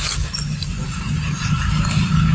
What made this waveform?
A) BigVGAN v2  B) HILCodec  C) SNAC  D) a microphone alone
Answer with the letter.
D